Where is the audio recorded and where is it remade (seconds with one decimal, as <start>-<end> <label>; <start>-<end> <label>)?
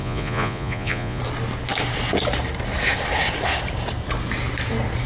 0.0-1.2 remade; 1.2-5.1 recorded